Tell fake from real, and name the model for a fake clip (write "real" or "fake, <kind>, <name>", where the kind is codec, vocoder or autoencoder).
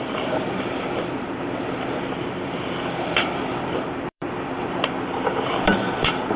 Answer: fake, vocoder, BigVGAN v2